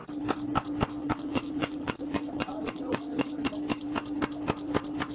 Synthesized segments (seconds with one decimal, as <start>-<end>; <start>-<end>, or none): 1.0-3.5